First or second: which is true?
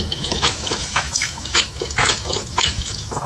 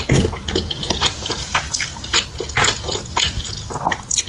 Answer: second